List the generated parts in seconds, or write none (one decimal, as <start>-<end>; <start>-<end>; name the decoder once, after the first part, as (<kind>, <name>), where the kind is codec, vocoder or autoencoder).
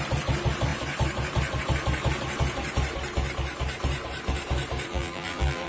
4.9-5.7 (vocoder, BigVGAN v2)